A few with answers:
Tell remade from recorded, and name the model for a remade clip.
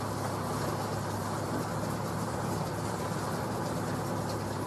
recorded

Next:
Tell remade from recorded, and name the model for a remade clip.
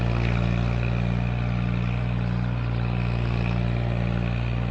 recorded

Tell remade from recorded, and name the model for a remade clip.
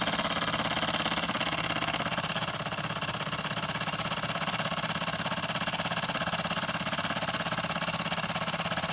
recorded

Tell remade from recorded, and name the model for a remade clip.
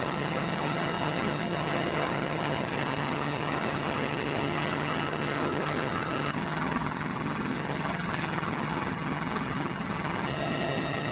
remade, vocoder, HiFi-GAN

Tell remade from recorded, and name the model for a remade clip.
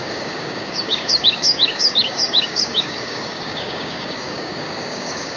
remade, codec, DAC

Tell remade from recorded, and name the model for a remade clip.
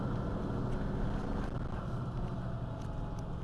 recorded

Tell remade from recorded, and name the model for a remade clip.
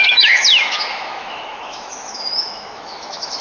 remade, autoencoder, DAC-VAE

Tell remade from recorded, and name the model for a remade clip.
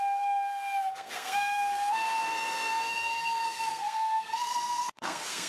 remade, codec, SNAC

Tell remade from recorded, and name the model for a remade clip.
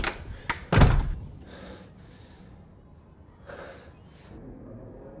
recorded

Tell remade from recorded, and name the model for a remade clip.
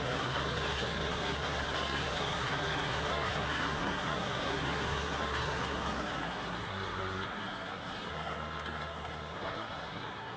remade, codec, SNAC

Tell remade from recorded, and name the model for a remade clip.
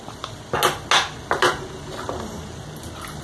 recorded